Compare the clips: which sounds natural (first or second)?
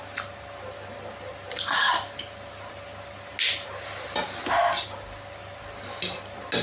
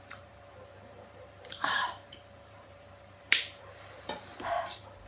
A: first